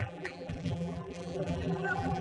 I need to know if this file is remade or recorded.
remade